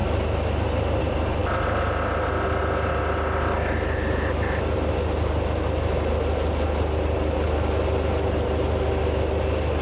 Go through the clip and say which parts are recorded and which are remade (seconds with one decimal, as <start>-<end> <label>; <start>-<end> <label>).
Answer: 0.0-9.8 recorded